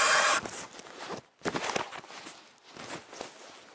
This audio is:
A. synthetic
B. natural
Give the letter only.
B